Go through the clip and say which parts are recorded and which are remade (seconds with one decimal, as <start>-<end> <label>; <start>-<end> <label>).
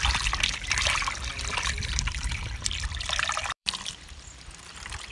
0.0-5.1 remade